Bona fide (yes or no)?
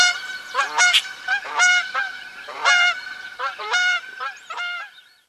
no